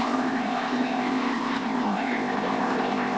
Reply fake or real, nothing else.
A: fake